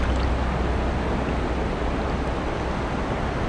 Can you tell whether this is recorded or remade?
recorded